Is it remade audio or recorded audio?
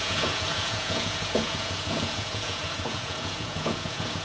remade